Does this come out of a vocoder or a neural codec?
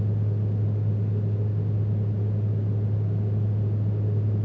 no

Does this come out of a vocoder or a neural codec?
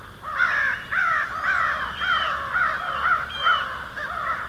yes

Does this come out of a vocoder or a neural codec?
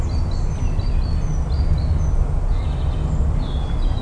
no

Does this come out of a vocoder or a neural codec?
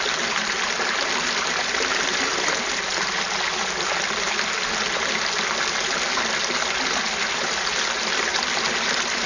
no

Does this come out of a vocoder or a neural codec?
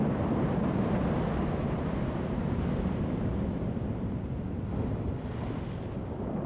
no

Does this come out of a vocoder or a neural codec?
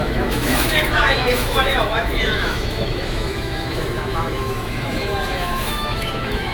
yes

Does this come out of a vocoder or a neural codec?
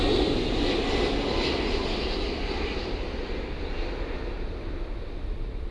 no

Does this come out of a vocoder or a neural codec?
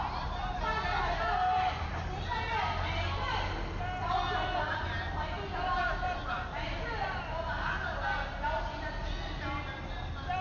no